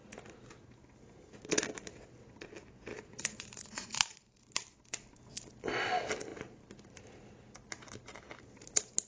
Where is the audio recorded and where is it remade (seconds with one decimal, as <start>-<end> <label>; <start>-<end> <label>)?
0.0-2.9 recorded; 2.9-4.4 remade; 4.4-9.1 recorded